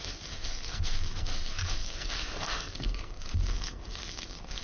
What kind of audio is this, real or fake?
fake